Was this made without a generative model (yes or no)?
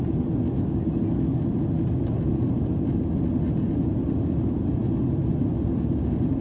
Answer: yes